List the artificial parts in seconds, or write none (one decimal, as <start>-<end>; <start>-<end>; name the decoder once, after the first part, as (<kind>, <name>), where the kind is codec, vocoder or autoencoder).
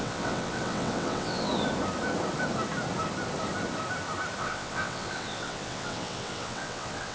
0.0-1.5 (vocoder, WaveNeXt); 4.4-7.1